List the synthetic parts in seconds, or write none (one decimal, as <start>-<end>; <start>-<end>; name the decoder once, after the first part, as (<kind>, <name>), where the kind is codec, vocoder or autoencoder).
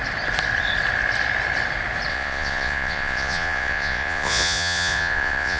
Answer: 2.1-5.6 (vocoder, Vocos)